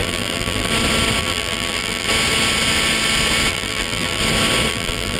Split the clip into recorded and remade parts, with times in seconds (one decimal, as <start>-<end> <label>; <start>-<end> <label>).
0.0-0.7 remade; 0.7-1.2 recorded; 1.2-2.1 remade; 2.1-3.5 recorded; 3.5-4.2 remade; 4.2-4.7 recorded; 4.7-5.2 remade